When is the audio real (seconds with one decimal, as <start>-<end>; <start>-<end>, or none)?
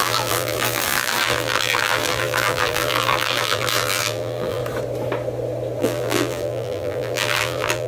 4.6-5.8